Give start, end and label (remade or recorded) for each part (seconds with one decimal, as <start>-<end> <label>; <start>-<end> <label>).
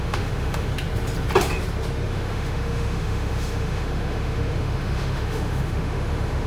0.0-0.7 remade; 0.7-2.1 recorded; 2.1-6.5 remade